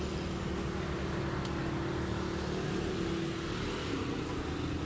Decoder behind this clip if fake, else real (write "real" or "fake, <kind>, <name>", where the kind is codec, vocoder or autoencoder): real